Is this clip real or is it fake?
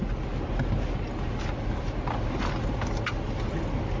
real